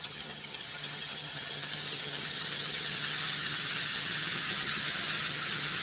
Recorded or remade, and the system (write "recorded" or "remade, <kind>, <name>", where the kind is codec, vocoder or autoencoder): remade, vocoder, HiFi-GAN